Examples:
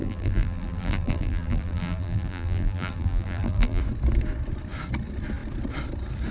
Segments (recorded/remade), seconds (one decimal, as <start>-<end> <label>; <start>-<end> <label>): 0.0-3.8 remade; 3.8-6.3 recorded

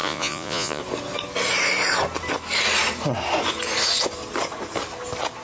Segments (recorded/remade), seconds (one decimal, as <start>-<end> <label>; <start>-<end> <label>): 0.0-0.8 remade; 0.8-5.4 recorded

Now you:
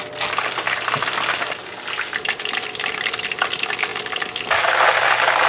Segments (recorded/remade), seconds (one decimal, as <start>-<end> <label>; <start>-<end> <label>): 0.0-5.5 recorded

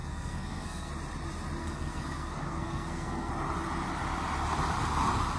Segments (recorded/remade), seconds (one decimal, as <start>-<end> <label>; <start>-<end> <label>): 0.0-0.9 remade; 0.9-1.6 recorded; 1.6-3.3 remade; 3.3-5.4 recorded